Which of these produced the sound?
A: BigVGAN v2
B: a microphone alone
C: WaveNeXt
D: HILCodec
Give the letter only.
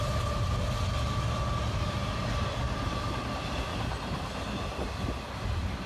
B